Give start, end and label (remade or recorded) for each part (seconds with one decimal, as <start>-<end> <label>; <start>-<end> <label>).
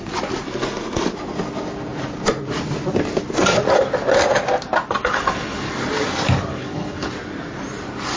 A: 0.0-5.0 recorded; 5.0-5.7 remade; 5.7-6.5 recorded; 6.5-7.1 remade; 7.1-8.2 recorded